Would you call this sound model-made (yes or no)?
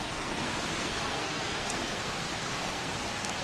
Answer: yes